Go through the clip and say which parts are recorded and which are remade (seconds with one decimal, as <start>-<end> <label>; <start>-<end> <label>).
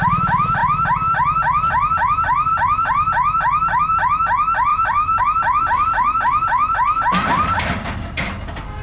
0.0-4.7 recorded; 4.7-5.2 remade; 5.2-8.8 recorded